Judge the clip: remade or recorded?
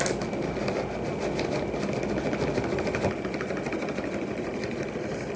recorded